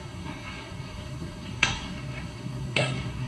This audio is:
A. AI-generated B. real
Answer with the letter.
A